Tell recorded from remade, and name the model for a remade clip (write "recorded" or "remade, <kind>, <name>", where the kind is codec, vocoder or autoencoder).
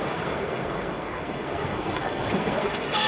remade, codec, SNAC